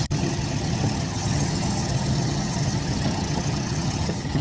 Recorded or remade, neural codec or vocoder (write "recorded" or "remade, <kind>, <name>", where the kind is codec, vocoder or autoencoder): remade, vocoder, HiFi-GAN